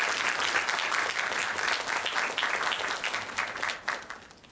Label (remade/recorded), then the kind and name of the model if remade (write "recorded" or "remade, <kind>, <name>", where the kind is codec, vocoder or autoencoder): recorded